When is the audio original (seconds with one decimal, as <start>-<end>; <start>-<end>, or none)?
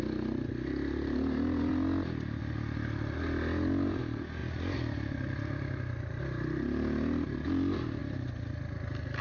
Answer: 0.0-9.2